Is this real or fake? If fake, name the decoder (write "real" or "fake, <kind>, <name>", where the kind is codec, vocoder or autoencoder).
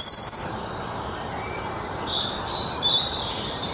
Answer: fake, vocoder, BigVGAN v2